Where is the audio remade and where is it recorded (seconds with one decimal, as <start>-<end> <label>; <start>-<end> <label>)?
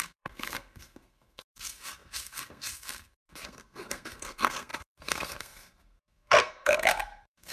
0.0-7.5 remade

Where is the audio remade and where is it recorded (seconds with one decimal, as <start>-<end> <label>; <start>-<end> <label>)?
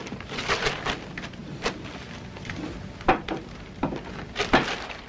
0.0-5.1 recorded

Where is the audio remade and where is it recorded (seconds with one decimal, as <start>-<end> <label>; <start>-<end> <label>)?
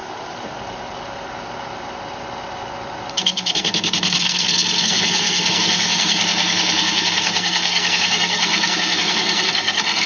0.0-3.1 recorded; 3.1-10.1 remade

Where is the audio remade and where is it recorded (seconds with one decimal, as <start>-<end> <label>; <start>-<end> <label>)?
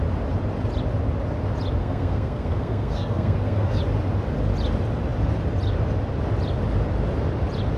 0.0-1.8 recorded; 1.8-3.8 remade; 3.8-7.8 recorded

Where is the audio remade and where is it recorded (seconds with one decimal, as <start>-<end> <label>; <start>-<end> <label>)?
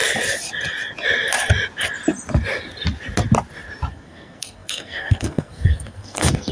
0.0-3.9 recorded; 3.9-6.5 remade